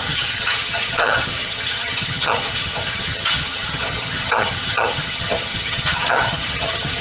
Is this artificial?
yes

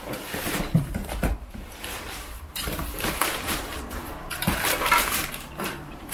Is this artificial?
yes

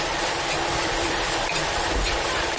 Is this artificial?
yes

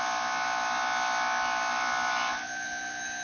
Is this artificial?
no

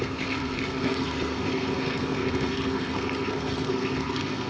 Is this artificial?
yes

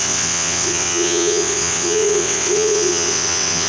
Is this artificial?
yes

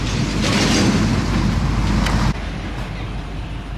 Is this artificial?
no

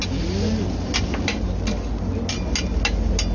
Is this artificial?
no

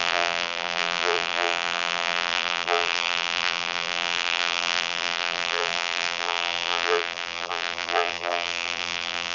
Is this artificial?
yes